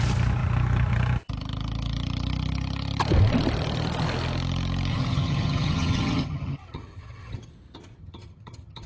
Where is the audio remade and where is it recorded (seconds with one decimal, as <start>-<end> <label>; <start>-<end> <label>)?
0.0-4.9 recorded; 4.9-7.5 remade; 7.5-8.0 recorded; 8.0-8.9 remade